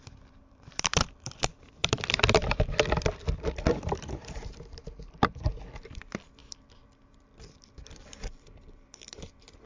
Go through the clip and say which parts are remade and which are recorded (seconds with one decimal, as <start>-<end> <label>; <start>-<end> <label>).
0.0-9.7 remade